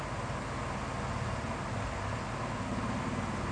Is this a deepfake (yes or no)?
no